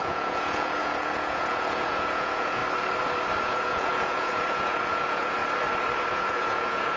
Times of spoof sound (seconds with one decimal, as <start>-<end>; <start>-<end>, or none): 0.0-2.6; 3.4-5.4; 6.1-7.0